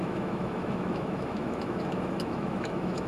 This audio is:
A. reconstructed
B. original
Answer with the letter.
A